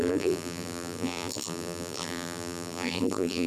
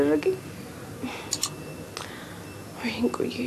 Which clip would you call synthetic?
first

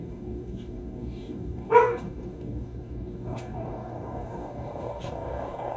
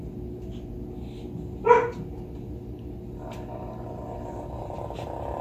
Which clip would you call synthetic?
first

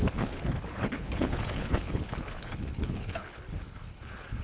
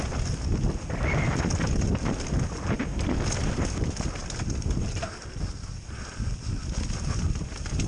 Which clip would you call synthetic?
first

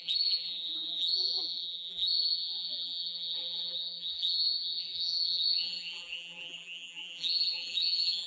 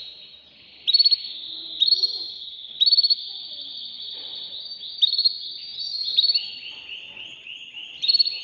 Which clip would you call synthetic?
first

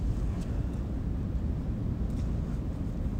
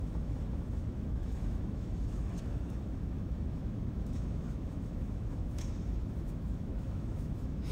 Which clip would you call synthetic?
second